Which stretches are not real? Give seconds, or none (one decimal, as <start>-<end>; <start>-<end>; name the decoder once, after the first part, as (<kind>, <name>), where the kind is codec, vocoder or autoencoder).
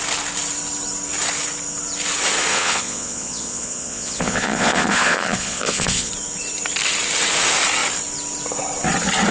2.5-6.1 (vocoder, Vocos)